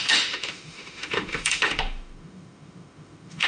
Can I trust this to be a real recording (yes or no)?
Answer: no